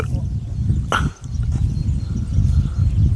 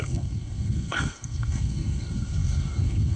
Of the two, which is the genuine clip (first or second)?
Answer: first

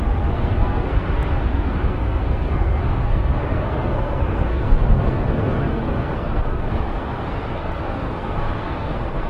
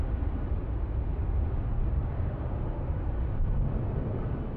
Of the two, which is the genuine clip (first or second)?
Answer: second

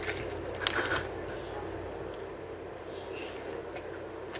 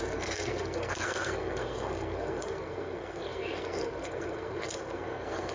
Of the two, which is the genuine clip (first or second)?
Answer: first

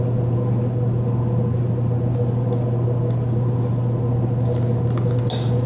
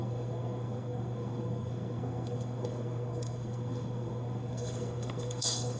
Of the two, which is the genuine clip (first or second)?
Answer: first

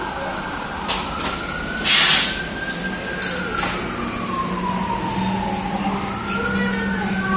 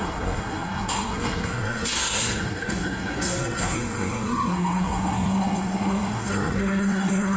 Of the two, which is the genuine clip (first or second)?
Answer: first